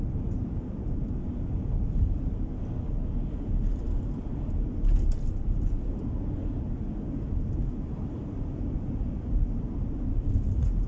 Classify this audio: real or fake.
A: real